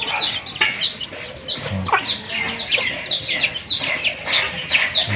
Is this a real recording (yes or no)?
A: yes